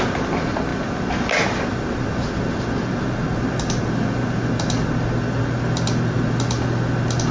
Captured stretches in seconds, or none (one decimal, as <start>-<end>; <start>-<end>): 0.0-7.3